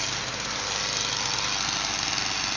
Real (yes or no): yes